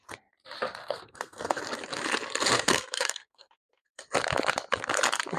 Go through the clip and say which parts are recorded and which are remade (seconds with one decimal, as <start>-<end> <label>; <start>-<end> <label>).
0.0-0.8 recorded; 0.8-1.6 remade; 1.6-2.5 recorded; 2.5-4.0 remade; 4.0-5.4 recorded